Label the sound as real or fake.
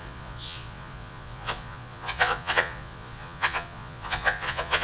fake